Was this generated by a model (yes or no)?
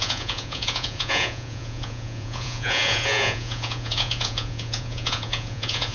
yes